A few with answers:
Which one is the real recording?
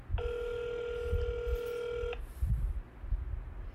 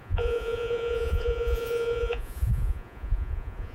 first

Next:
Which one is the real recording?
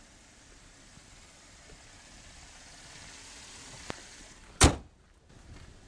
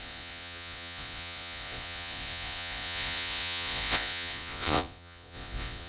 first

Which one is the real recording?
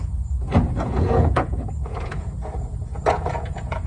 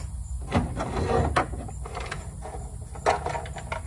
second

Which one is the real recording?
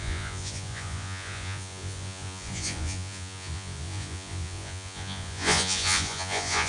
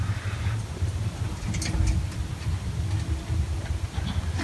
second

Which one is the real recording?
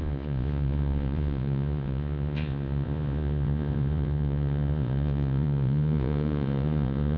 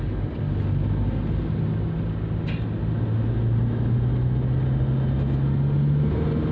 second